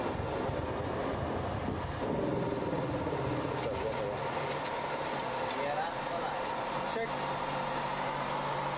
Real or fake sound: real